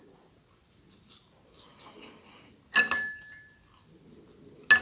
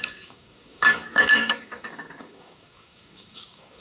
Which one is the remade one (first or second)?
second